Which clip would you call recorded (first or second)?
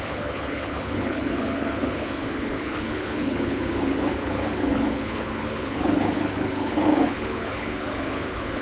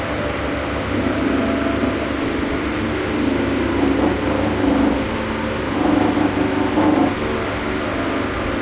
second